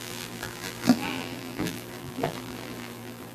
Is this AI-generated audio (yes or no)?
yes